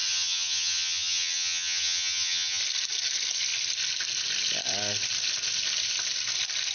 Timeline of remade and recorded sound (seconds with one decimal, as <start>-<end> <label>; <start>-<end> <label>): 0.0-2.6 remade; 2.6-6.7 recorded